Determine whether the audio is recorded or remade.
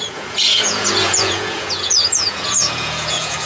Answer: remade